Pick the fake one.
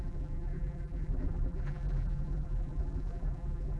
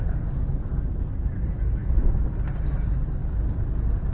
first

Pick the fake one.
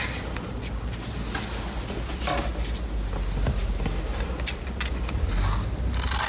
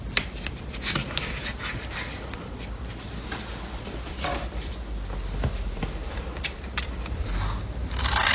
second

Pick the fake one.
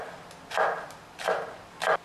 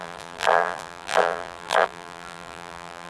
second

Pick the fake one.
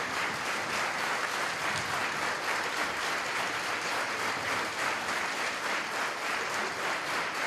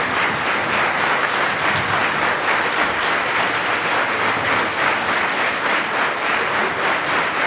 first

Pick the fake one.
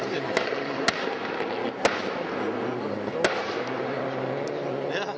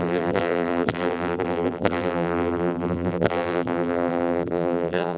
second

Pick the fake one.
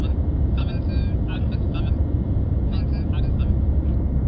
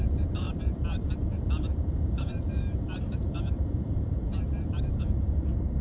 second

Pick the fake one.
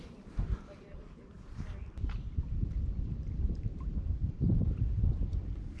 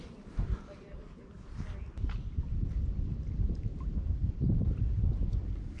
first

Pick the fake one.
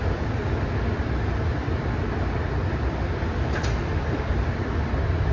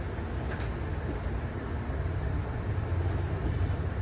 first